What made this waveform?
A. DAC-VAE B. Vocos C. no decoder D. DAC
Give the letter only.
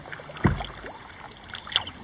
C